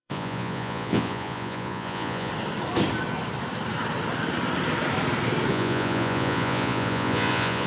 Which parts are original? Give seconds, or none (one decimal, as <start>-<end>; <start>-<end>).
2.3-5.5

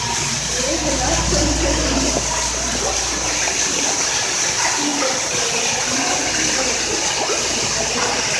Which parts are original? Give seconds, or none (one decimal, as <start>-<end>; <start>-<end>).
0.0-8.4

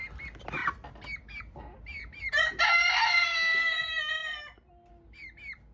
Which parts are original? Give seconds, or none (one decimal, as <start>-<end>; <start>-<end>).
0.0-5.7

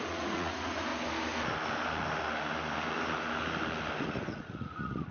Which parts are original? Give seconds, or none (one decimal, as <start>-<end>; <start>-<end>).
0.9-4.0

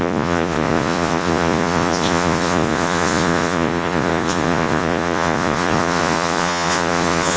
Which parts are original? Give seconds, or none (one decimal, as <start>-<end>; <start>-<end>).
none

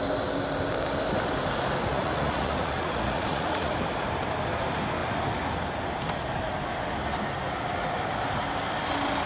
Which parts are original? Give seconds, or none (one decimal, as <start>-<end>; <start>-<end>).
0.0-1.9; 3.7-9.3

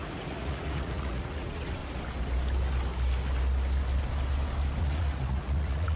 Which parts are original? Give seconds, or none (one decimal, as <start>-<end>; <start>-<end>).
1.8-4.8